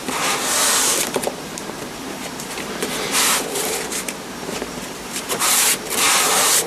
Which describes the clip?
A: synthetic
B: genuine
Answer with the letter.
A